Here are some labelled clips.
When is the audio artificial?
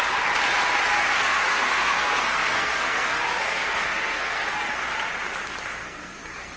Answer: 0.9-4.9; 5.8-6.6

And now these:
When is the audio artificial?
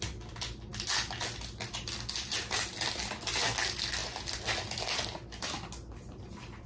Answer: none